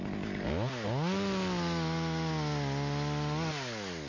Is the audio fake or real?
real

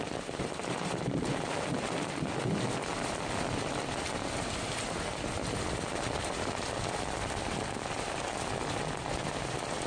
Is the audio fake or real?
real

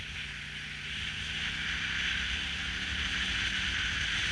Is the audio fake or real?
real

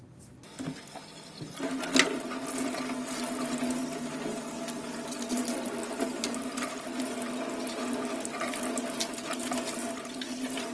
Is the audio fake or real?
real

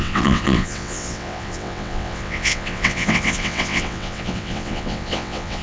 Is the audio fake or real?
fake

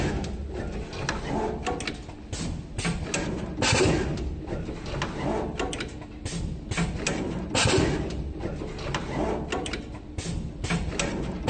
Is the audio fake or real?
real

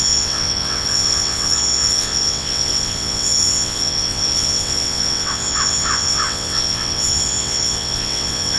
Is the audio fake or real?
fake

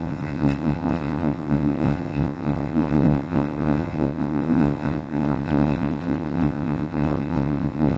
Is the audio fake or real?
fake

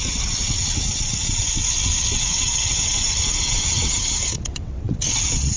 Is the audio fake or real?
fake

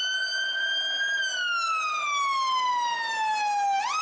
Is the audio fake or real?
real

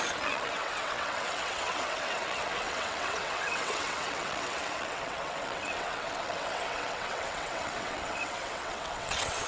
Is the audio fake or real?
fake